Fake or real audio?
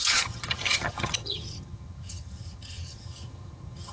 fake